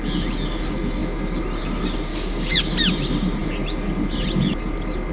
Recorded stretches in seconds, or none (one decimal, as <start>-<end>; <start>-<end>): 0.0-2.1; 2.6-5.1